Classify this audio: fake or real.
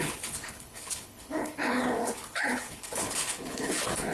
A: fake